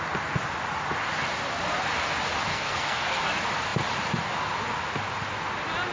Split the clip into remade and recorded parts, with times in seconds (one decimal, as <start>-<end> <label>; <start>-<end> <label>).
0.0-2.5 recorded; 2.5-3.2 remade; 3.2-5.9 recorded